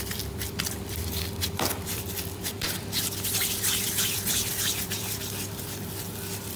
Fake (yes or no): yes